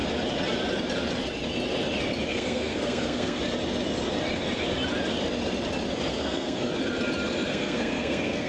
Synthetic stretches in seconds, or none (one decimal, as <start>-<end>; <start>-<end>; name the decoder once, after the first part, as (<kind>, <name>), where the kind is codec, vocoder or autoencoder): 2.3-3.4 (codec, SNAC); 6.1-6.7; 7.5-8.5